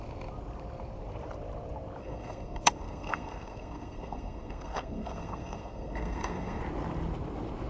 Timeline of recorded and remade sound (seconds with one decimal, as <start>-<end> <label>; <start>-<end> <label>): 0.0-2.0 recorded; 2.0-6.6 remade; 6.6-7.7 recorded